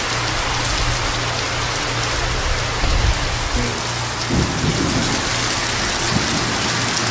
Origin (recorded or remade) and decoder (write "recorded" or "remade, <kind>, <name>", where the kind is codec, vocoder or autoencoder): recorded